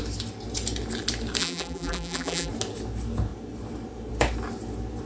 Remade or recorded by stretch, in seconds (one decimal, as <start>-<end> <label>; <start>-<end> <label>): 0.0-1.4 recorded; 1.4-2.5 remade; 2.5-5.1 recorded